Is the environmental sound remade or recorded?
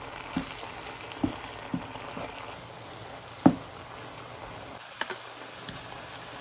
recorded